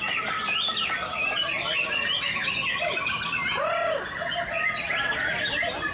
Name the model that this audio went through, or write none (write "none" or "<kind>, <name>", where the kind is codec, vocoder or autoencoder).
none